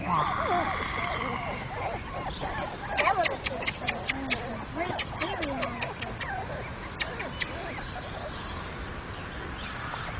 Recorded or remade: recorded